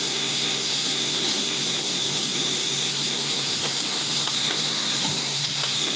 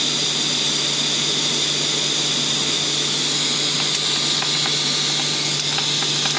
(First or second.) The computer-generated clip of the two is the first